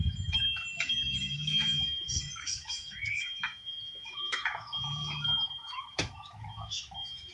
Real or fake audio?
fake